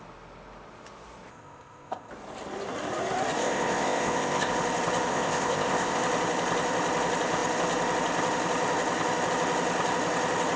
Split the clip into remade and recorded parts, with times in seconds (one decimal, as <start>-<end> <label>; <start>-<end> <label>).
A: 0.0-1.3 recorded; 1.3-2.1 remade; 2.1-3.4 recorded; 3.4-4.5 remade; 4.5-5.1 recorded; 5.1-6.0 remade; 6.0-10.6 recorded